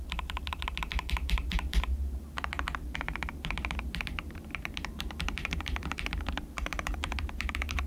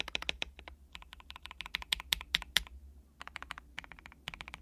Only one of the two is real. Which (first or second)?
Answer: second